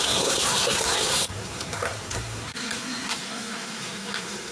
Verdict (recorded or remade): remade